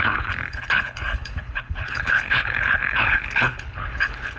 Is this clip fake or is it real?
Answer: fake